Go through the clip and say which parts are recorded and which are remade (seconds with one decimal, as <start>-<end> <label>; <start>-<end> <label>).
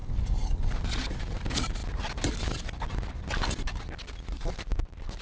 0.0-5.2 recorded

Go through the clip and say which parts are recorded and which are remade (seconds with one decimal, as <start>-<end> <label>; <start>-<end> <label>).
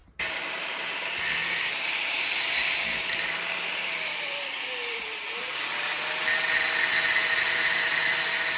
0.0-0.9 remade; 0.9-1.4 recorded; 1.4-6.1 remade; 6.1-8.6 recorded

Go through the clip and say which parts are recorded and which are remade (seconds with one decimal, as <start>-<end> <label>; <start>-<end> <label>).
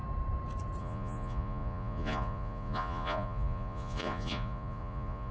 0.0-0.8 recorded; 0.8-5.3 remade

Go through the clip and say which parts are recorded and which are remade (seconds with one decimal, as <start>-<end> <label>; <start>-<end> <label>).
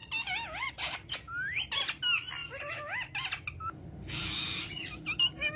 0.0-5.6 recorded